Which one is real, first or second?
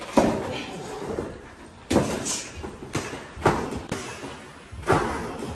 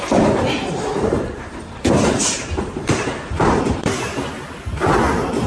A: first